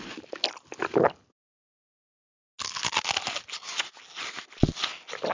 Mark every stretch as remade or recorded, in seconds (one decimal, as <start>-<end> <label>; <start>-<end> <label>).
0.0-5.3 recorded

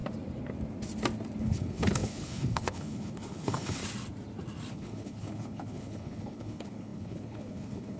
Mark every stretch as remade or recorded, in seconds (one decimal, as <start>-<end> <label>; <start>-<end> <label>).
0.0-1.4 recorded; 1.4-3.8 remade; 3.8-4.7 recorded; 4.7-8.0 remade

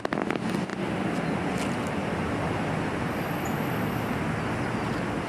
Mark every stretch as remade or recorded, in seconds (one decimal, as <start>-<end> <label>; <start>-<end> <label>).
0.0-5.3 recorded

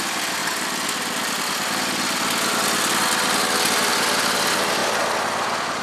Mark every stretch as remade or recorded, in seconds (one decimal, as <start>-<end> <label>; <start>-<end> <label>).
0.0-5.8 recorded

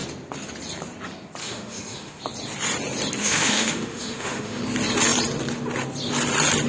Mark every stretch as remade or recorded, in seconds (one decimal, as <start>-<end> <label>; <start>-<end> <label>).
0.0-1.4 recorded; 1.4-2.2 remade; 2.2-3.2 recorded; 3.2-4.6 remade; 4.6-6.7 recorded

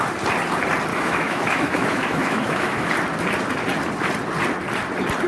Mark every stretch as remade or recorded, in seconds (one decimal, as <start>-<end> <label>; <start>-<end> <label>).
0.0-0.9 recorded; 0.9-2.9 remade; 2.9-5.3 recorded

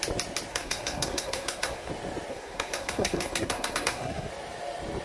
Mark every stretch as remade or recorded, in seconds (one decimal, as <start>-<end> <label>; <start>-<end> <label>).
0.0-0.5 recorded; 0.5-1.9 remade; 1.9-2.3 recorded; 2.3-4.3 remade; 4.3-5.0 recorded